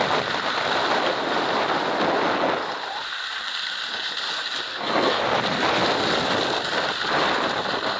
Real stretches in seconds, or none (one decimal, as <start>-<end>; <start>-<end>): 0.0-4.7; 5.2-8.0